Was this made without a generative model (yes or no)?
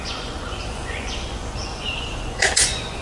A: no